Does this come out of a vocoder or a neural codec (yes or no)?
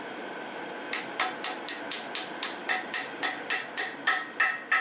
no